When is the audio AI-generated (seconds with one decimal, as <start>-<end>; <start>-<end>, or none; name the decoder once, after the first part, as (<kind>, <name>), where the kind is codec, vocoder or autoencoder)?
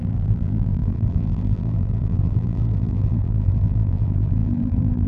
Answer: 0.0-5.1 (vocoder, BigVGAN v2)